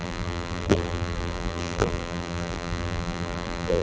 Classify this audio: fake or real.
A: fake